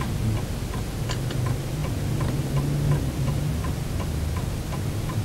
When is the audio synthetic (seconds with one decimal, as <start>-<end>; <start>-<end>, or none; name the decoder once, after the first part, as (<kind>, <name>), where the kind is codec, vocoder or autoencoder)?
none